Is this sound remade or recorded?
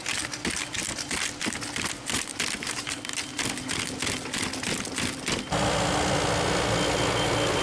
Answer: recorded